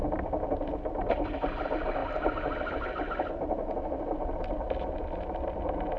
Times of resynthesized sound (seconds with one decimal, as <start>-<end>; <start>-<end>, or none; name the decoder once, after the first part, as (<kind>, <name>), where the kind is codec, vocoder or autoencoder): none